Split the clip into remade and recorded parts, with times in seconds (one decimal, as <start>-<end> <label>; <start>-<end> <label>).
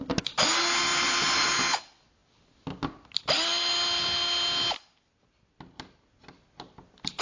0.0-7.2 recorded